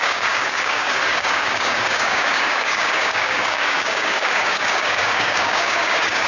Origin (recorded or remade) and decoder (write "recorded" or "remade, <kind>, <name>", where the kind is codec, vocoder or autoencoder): remade, codec, DAC